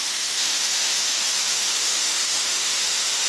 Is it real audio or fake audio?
fake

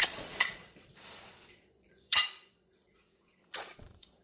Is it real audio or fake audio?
fake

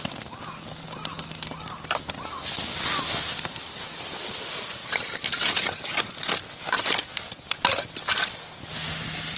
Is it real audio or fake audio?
real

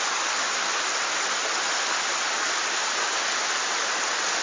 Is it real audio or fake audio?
real